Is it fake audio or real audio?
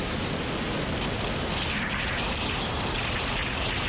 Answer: real